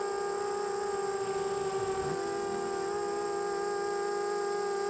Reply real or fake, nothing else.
real